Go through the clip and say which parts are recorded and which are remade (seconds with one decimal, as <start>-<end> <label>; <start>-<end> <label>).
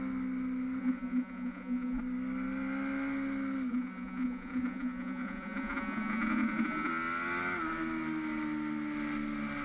0.0-0.8 recorded; 0.8-2.0 remade; 2.0-3.7 recorded; 3.7-6.9 remade; 6.9-9.6 recorded